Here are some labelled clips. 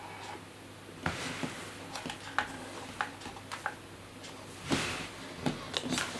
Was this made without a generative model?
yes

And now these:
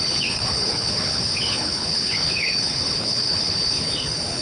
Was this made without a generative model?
no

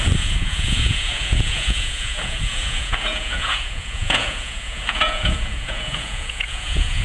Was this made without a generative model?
no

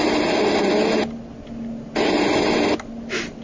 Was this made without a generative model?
yes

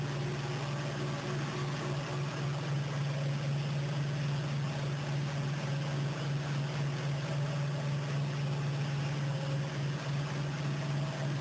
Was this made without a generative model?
yes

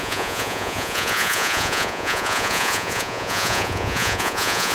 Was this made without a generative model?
no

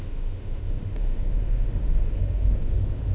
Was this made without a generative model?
no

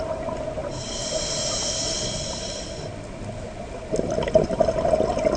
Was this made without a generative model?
yes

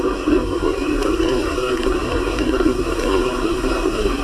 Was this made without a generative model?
no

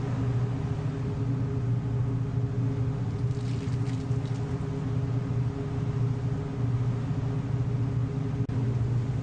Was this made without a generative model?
yes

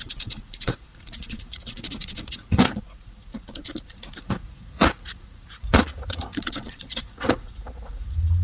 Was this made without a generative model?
no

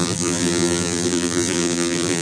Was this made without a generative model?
no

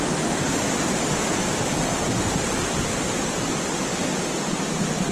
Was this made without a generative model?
yes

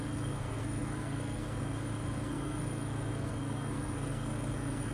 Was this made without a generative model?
no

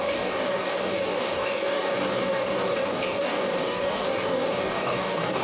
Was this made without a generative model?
no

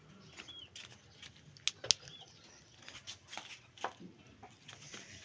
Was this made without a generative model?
yes